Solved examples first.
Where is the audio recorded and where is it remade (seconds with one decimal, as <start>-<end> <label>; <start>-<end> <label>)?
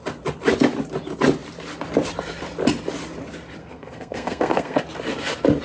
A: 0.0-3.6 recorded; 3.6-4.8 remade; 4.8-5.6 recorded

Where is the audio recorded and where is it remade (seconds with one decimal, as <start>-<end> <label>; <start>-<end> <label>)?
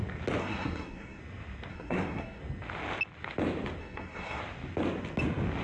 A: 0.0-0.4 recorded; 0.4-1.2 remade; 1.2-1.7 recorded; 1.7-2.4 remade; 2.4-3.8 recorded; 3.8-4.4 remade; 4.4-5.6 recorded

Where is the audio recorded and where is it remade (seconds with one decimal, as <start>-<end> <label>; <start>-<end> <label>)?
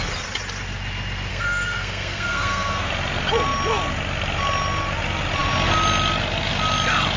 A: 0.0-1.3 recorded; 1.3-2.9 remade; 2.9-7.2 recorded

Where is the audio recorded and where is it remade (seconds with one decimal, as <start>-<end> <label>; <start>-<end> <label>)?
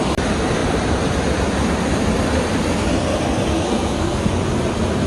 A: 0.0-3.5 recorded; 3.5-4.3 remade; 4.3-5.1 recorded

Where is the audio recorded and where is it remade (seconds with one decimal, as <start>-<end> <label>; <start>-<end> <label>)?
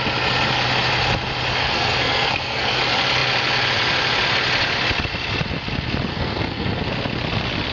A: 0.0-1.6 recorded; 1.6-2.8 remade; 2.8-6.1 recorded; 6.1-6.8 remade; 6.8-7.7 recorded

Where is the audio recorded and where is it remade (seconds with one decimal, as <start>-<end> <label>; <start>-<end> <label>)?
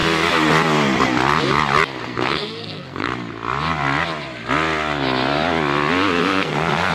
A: 0.0-2.0 recorded; 2.0-3.1 remade; 3.1-6.2 recorded; 6.2-6.9 remade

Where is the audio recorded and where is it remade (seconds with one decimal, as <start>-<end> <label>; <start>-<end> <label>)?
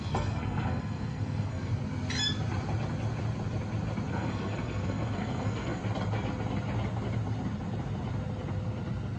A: 0.0-1.7 remade; 1.7-4.1 recorded; 4.1-5.8 remade; 5.8-9.2 recorded